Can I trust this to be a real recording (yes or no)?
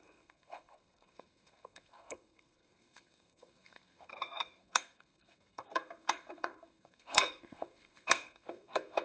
no